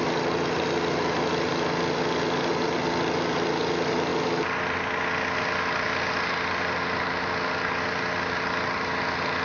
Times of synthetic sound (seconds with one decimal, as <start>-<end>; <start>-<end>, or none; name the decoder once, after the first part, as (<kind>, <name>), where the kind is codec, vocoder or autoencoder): none